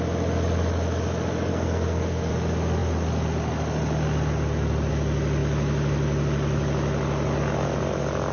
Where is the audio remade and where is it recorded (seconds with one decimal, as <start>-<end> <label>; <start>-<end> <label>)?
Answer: 0.0-1.5 recorded; 1.5-2.3 remade; 2.3-8.3 recorded